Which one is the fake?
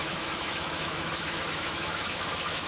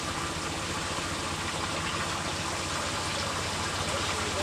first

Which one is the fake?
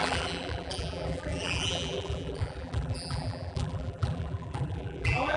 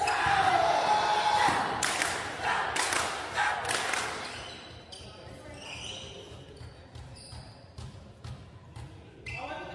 first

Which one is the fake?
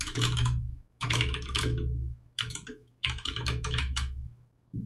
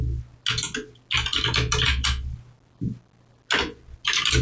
first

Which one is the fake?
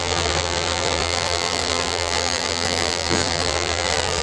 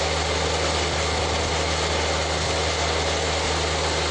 first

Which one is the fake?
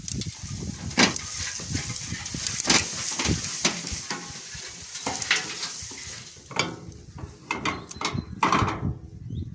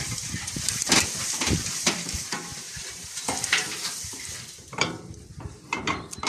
second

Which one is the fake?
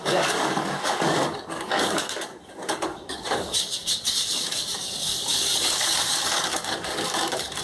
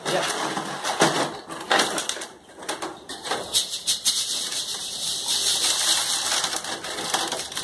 first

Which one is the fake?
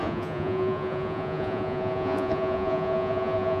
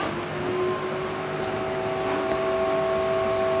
first